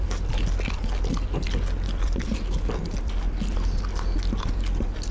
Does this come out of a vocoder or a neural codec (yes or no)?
no